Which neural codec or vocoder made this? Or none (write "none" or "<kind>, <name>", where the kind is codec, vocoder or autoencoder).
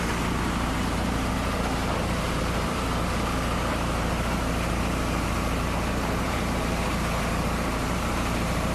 vocoder, BigVGAN v2